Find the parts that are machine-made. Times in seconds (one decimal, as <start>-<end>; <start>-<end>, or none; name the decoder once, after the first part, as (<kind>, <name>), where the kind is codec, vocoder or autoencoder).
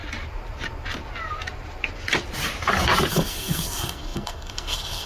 3.1-5.1 (codec, SNAC)